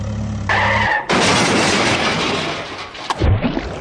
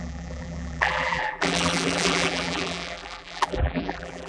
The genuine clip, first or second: first